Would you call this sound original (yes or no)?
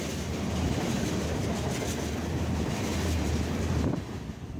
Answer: yes